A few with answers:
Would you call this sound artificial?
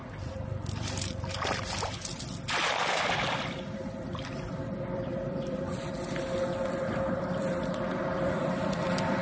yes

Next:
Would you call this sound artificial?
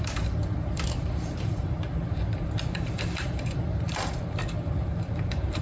yes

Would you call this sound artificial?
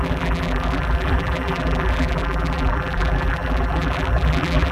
yes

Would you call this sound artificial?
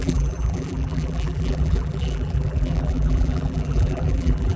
yes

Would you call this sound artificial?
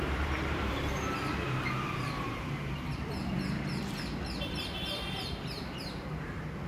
yes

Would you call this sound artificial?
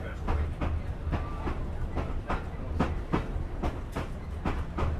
no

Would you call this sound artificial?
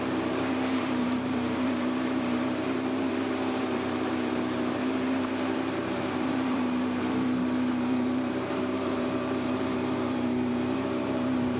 yes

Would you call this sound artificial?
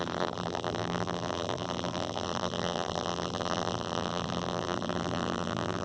yes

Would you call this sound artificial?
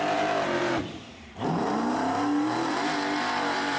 yes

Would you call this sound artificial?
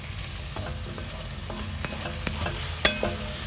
no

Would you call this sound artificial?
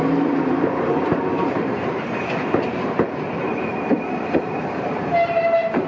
yes